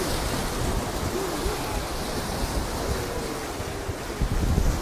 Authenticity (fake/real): real